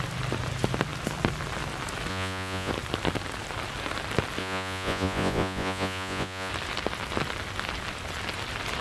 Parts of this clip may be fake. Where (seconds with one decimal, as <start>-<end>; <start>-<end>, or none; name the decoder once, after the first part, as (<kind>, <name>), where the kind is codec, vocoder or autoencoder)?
2.1-2.7 (vocoder, Vocos); 4.4-6.5